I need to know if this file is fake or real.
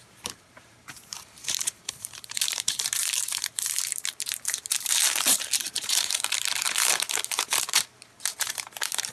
fake